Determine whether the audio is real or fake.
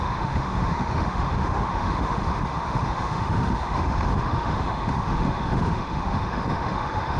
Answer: fake